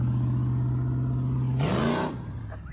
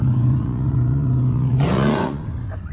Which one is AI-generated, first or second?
second